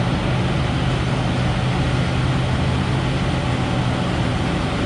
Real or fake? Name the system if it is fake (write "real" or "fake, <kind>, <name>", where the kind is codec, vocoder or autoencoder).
real